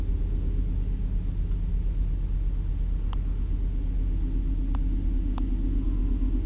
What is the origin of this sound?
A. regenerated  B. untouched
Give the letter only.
B